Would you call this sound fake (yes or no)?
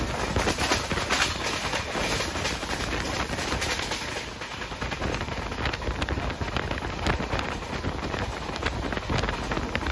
no